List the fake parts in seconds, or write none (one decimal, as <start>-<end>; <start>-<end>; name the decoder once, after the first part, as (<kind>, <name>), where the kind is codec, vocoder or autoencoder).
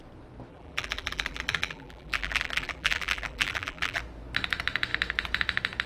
0.5-4.0 (vocoder, BigVGAN v2)